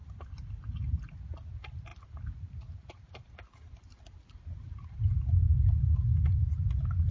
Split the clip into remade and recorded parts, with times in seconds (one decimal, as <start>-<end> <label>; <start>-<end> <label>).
0.0-1.1 remade; 1.1-1.9 recorded; 1.9-5.9 remade; 5.9-7.1 recorded